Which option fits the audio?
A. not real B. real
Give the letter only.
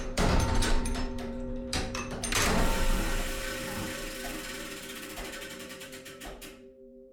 A